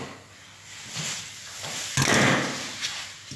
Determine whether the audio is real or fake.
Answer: real